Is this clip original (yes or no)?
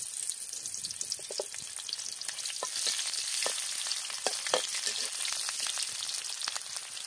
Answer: yes